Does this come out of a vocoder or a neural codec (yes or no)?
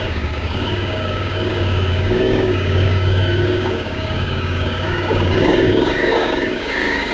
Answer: yes